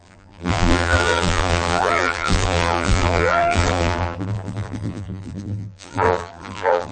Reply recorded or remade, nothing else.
remade